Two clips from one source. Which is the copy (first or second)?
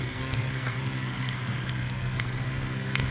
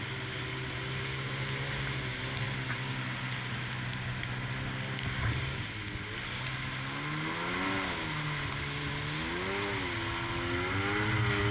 first